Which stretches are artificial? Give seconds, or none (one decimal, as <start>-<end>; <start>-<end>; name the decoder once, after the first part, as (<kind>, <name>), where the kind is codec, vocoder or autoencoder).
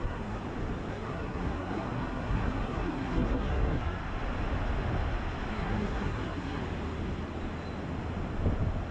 0.0-0.4 (codec, SNAC); 0.9-4.0; 5.5-6.6